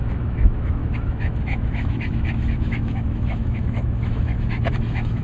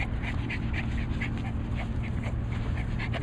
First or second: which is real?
second